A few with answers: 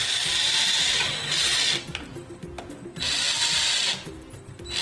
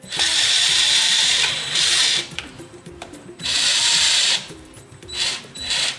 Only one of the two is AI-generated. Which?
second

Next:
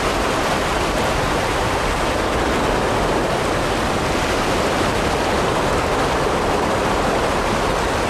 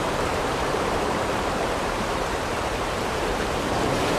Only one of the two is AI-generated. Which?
second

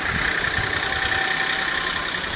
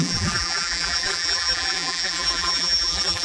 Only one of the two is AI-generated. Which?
second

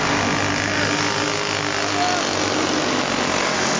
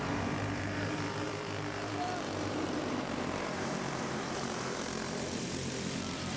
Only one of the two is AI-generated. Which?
second